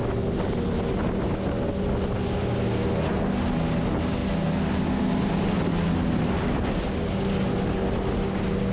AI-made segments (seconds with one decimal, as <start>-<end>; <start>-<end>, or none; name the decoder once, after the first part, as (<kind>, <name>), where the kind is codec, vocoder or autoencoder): none